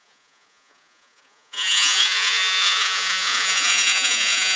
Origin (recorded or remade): remade